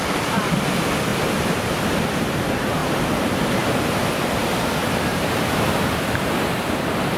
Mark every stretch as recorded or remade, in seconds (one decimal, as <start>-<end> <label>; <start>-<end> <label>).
0.0-1.1 recorded; 1.1-2.0 remade; 2.0-5.1 recorded; 5.1-5.9 remade; 5.9-7.2 recorded